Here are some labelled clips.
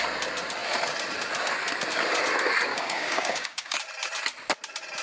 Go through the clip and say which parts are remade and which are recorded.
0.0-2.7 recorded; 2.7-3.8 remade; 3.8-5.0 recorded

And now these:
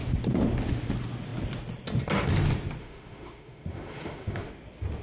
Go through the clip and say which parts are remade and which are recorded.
0.0-2.8 recorded; 2.8-4.5 remade; 4.5-5.0 recorded

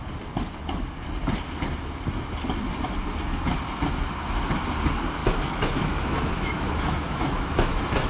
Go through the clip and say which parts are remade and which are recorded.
0.0-5.2 recorded; 5.2-8.1 remade

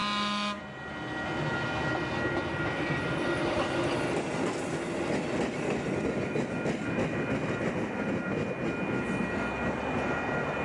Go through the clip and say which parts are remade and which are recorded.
0.0-10.6 recorded

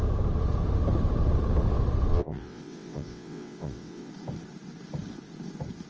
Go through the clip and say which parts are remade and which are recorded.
0.0-2.1 recorded; 2.1-4.1 remade; 4.1-5.9 recorded